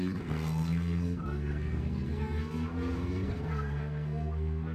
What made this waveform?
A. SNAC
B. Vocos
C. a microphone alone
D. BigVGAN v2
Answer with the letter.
A